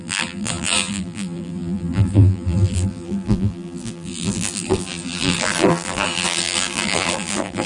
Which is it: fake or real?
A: fake